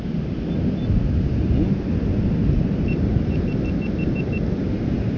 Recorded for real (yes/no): yes